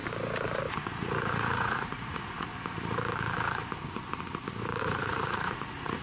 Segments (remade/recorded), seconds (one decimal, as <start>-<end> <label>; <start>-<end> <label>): 0.0-0.7 recorded; 0.7-2.5 remade; 2.5-4.8 recorded; 4.8-6.0 remade